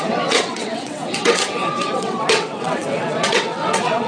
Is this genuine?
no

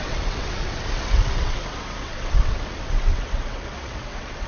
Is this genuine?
no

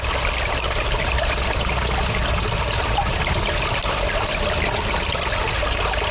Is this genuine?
yes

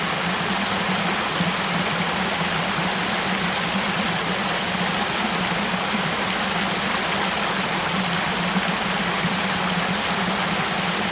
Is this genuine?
yes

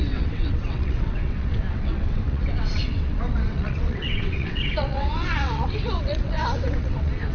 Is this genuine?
no